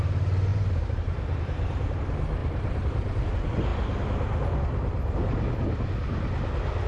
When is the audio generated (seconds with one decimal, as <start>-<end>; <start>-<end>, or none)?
0.5-2.0; 2.4-3.3